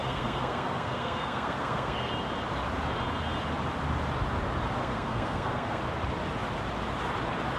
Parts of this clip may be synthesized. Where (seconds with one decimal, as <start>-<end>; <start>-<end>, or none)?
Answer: 0.0-2.1; 4.8-5.8